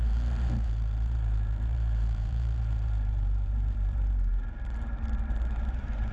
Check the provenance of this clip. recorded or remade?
remade